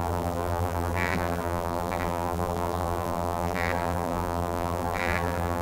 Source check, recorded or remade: remade